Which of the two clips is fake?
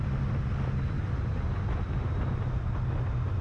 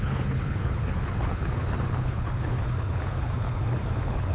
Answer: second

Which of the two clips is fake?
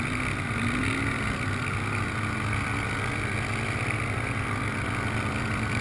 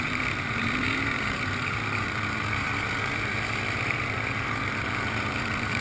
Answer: second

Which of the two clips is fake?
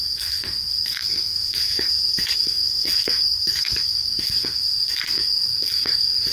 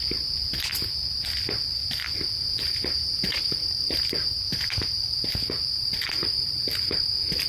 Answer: first